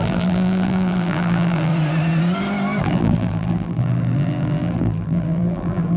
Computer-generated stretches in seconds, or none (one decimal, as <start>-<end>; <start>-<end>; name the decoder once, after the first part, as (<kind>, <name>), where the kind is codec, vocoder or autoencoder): 0.0-1.7 (vocoder, BigVGAN v2); 2.8-6.0